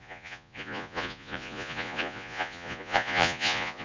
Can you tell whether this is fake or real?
fake